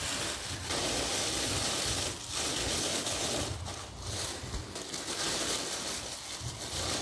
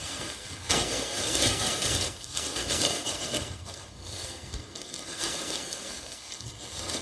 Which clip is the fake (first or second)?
second